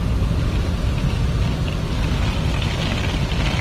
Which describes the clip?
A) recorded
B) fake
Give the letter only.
A